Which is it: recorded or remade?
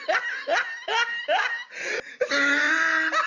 recorded